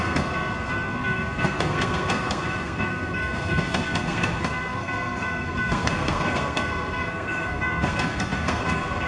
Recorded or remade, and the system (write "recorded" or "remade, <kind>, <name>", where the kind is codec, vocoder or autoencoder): remade, codec, SNAC